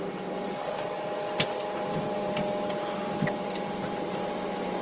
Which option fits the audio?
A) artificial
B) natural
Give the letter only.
B